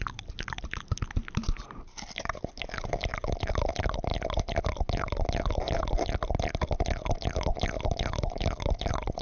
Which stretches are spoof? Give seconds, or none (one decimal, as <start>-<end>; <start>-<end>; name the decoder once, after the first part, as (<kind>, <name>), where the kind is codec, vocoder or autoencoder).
none